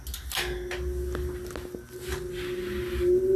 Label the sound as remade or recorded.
recorded